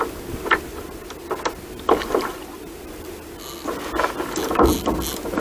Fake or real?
real